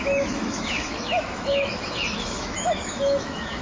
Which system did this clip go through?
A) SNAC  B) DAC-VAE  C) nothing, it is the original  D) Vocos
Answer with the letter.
B